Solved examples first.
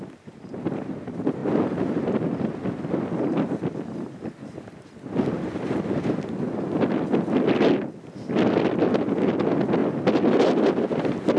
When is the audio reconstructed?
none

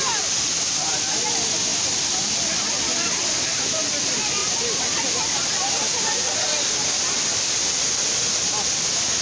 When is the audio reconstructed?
1.7-4.0 (vocoder, BigVGAN v2); 4.4-5.0

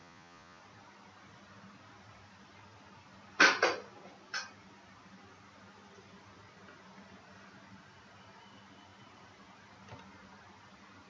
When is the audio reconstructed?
0.0-0.6 (vocoder, Vocos)

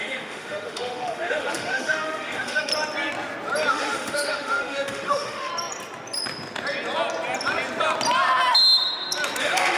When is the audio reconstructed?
0.0-2.7 (autoencoder, DAC-VAE); 3.7-5.5; 9.4-9.8

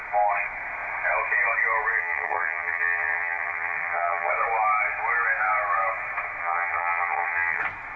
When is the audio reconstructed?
2.0-4.3 (vocoder, HiFi-GAN); 6.4-7.6